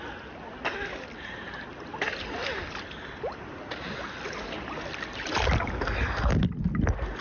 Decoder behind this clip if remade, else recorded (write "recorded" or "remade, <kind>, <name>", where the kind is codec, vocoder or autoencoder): recorded